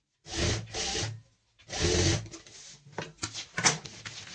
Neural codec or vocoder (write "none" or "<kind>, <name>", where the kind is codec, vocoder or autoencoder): none